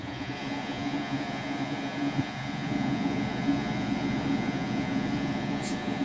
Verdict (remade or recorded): remade